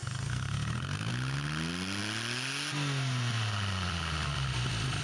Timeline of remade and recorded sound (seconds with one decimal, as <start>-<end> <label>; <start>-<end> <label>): 0.0-1.1 remade; 1.1-5.0 recorded

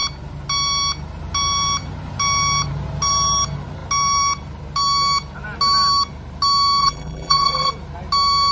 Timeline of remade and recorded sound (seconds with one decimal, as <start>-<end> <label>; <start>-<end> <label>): 0.0-6.8 recorded; 6.8-7.7 remade; 7.7-8.5 recorded